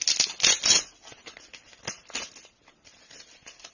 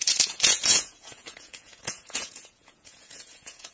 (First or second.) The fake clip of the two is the second